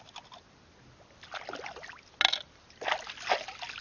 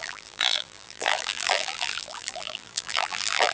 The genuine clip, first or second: first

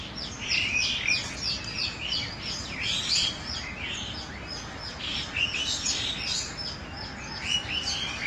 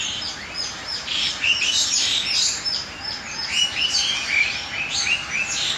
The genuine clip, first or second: first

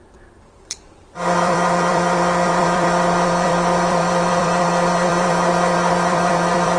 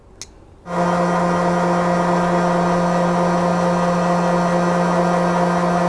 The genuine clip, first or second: second